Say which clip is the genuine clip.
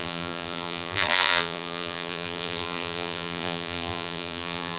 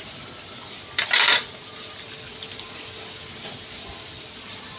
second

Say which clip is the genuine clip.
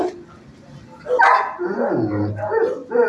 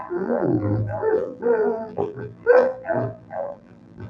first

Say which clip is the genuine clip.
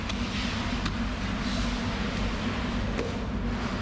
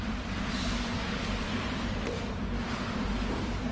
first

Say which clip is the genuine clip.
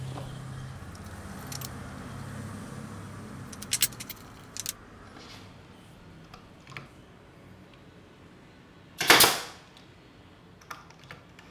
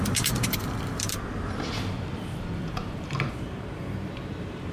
first